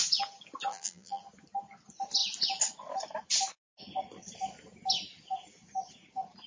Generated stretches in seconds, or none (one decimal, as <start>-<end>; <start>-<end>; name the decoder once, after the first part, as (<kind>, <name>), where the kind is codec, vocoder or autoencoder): 0.7-1.2 (vocoder, BigVGAN v2)